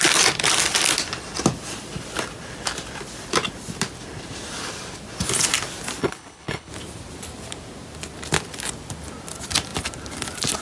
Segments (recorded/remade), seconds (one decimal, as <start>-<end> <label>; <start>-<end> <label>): 0.0-6.0 recorded; 6.0-6.7 remade; 6.7-10.6 recorded